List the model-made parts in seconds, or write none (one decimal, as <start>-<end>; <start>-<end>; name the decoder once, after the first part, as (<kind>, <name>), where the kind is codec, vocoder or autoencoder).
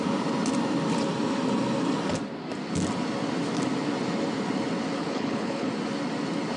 5.0-5.7 (codec, HILCodec)